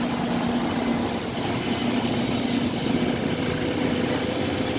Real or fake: real